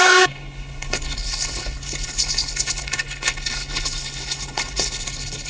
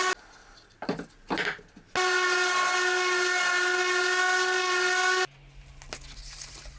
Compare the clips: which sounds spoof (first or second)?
first